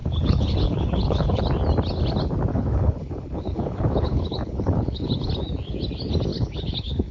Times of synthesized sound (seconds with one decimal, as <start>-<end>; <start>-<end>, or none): 0.0-1.4; 2.5-5.3; 6.3-7.1